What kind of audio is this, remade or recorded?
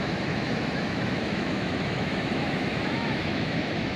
remade